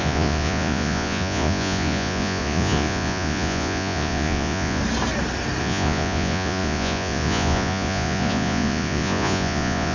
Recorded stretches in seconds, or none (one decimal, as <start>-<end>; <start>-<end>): 4.8-5.6